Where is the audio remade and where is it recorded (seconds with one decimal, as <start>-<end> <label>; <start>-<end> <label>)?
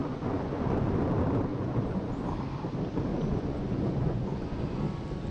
0.0-0.9 remade; 0.9-1.5 recorded; 1.5-2.1 remade; 2.1-3.1 recorded; 3.1-4.8 remade; 4.8-5.3 recorded